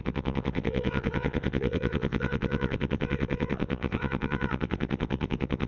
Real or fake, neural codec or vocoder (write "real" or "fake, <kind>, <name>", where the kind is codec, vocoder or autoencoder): fake, vocoder, WaveNeXt